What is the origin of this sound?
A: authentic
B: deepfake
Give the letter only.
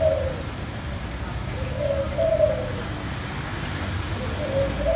A